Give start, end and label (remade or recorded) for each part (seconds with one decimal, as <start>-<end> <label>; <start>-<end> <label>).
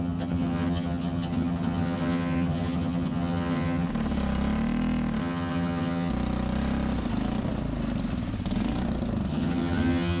0.0-3.9 remade; 3.9-5.2 recorded; 5.2-6.1 remade; 6.1-9.3 recorded; 9.3-10.2 remade